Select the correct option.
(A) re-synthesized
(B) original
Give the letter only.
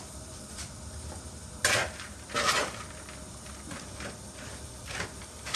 A